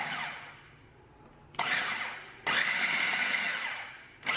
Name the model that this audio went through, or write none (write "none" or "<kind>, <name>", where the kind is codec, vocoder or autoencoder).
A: none